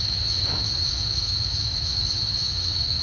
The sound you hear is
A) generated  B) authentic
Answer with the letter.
A